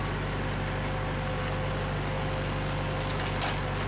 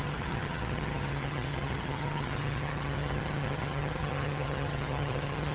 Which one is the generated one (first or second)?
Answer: second